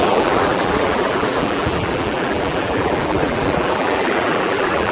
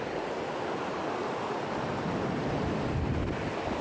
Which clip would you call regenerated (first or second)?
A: first